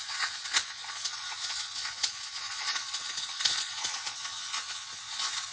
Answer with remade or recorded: remade